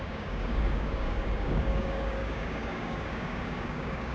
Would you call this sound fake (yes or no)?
yes